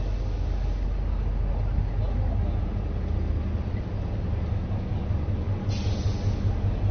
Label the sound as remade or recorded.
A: recorded